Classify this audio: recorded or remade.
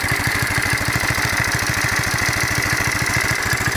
recorded